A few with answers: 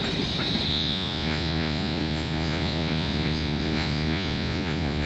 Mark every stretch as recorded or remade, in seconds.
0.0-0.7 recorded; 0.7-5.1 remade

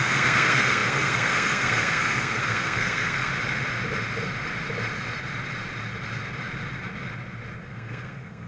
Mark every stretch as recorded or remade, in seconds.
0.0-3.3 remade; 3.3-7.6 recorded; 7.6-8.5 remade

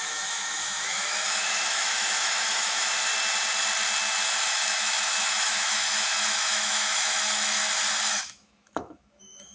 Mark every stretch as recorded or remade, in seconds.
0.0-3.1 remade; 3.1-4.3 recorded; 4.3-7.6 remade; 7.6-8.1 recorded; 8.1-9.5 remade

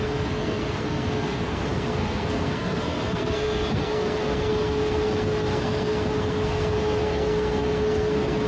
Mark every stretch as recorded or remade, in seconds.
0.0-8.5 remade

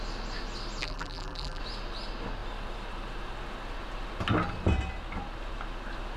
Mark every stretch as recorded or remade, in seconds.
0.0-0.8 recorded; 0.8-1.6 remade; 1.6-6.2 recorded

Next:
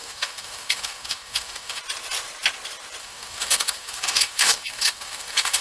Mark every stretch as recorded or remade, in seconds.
0.0-1.8 remade; 1.8-3.0 recorded; 3.0-5.6 remade